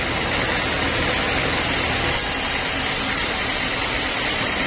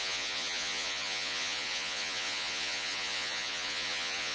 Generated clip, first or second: second